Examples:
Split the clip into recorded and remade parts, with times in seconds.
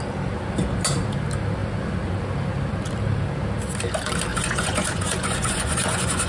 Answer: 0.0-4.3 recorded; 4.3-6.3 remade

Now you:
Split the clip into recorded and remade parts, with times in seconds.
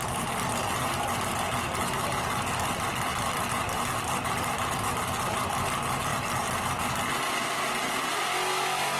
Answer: 0.0-9.0 recorded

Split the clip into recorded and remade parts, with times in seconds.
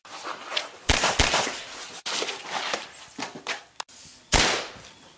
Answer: 0.0-5.2 recorded